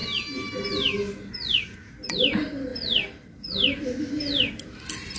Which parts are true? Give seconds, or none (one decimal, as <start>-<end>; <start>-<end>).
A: 0.0-5.2